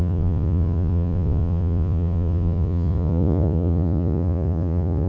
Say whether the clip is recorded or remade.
remade